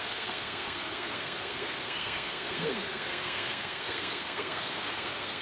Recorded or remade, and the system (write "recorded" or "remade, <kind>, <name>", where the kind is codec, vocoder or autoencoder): remade, codec, SNAC